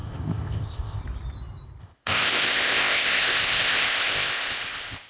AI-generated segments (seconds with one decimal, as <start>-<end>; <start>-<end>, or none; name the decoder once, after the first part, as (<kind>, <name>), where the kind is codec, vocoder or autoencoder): 0.0-1.0 (codec, ZipCodec); 1.8-5.1